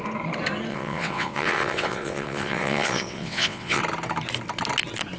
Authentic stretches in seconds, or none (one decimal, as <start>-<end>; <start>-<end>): 0.0-0.7; 3.8-5.2